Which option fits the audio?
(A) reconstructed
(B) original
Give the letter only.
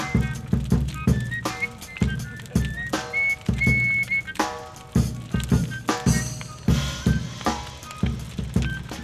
B